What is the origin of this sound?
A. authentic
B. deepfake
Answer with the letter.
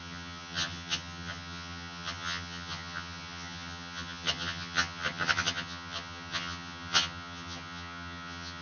B